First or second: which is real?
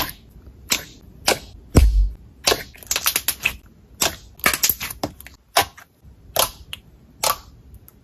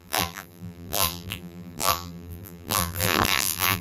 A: first